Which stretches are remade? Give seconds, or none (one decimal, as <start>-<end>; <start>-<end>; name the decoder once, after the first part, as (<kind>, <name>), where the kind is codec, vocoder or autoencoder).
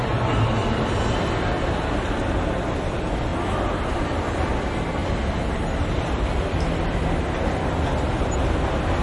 none